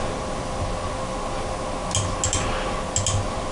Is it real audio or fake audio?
real